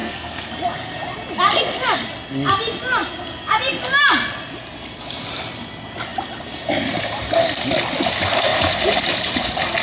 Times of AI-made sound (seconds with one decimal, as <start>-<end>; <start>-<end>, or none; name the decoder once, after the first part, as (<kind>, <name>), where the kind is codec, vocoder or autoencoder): 0.0-0.5 (codec, SNAC)